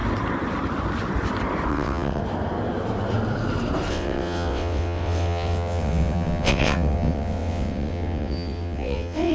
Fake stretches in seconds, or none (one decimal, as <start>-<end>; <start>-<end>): 1.7-2.2; 3.9-9.3